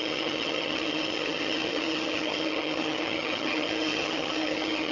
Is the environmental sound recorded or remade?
remade